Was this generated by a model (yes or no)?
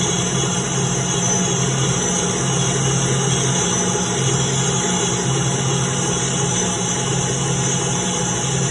no